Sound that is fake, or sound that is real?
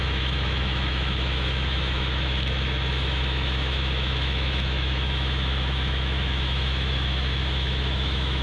fake